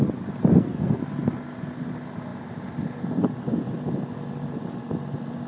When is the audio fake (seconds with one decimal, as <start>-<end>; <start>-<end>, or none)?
0.5-1.0